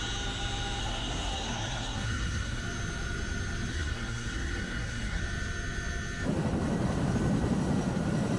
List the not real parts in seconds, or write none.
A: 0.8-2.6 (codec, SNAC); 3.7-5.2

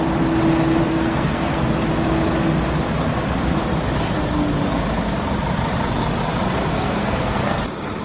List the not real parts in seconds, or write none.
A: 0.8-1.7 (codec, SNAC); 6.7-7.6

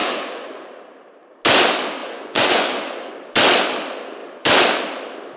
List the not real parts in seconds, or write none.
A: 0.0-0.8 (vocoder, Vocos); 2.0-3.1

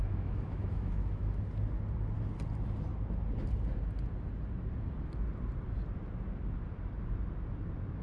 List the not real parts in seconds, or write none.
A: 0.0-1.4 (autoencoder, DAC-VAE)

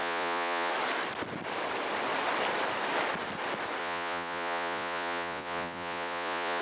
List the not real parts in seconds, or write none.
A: 0.0-0.7 (vocoder, Vocos); 3.8-6.6

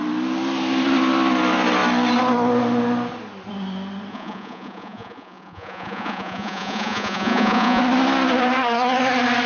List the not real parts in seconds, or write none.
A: 4.1-7.8 (vocoder, Vocos)

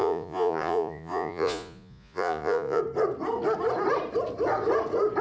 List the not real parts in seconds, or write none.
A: 0.0-2.8 (vocoder, Vocos)

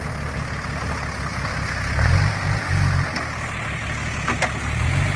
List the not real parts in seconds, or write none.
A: none